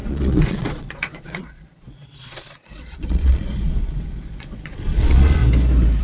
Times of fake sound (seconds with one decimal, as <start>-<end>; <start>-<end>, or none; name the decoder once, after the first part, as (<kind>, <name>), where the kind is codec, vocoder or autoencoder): 0.0-5.4 (vocoder, Vocos)